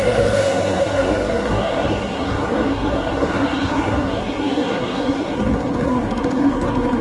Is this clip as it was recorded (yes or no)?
no